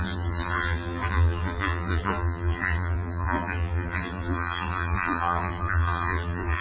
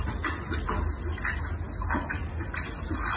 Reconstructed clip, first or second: first